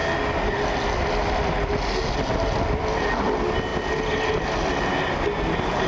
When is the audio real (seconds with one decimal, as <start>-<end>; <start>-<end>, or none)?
0.0-5.9